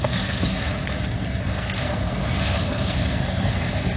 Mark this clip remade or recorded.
remade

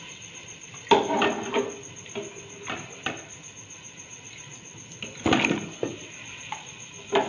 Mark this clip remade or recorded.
recorded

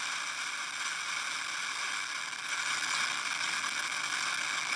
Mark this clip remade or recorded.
recorded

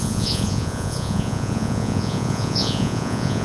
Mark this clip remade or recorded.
remade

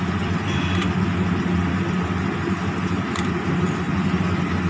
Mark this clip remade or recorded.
recorded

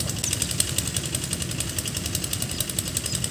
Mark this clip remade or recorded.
recorded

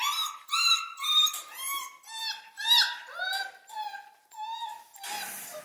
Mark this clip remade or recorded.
recorded